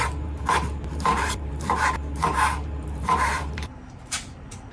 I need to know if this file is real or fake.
fake